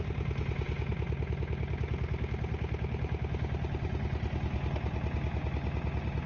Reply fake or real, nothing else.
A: real